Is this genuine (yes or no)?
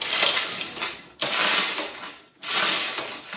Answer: yes